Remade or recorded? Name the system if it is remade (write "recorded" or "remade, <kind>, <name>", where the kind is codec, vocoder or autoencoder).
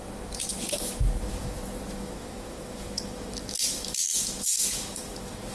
remade, autoencoder, DAC-VAE